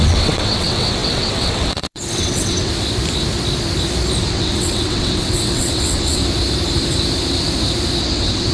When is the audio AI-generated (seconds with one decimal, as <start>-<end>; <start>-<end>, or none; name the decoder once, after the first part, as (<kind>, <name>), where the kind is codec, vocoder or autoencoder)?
0.0-2.7 (vocoder, WaveNeXt); 4.2-6.2; 8.0-8.5